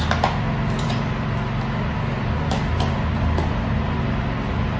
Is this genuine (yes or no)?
yes